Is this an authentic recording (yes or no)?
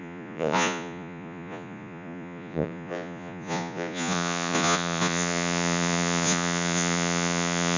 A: no